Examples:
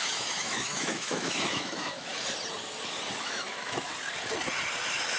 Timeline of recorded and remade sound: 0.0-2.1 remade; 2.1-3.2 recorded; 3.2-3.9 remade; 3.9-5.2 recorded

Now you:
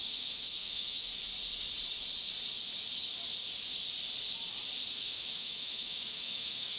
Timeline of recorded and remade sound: 0.0-1.1 remade; 1.1-4.9 recorded; 4.9-6.8 remade